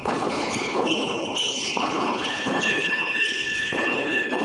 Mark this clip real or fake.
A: fake